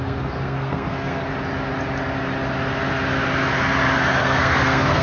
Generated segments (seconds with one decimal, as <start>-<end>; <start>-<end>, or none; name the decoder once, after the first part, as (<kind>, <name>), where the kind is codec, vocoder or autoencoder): 0.0-1.2 (codec, SNAC); 4.2-5.0